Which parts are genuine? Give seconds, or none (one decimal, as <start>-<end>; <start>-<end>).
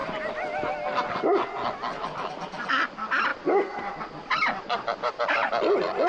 0.0-6.1